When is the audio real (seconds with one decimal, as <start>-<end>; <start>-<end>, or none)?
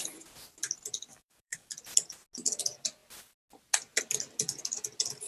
0.0-1.1; 1.7-5.3